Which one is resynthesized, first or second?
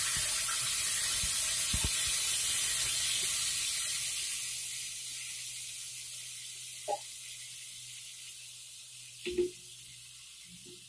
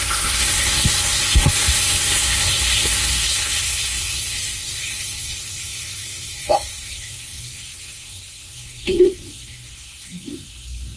second